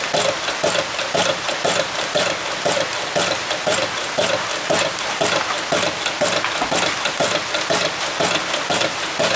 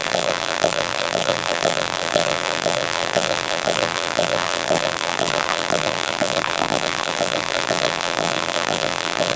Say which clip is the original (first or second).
first